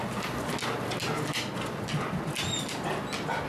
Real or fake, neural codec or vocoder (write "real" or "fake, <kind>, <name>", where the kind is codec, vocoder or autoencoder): real